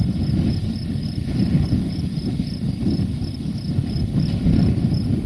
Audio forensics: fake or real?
real